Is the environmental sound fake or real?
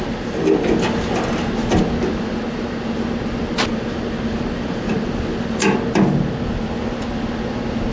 real